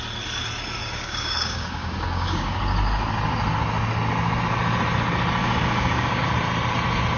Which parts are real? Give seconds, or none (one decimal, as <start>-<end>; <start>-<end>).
0.0-0.8; 2.6-5.4; 6.2-7.2